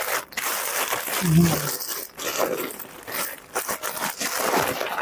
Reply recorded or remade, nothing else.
recorded